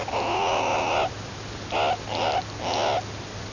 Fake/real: real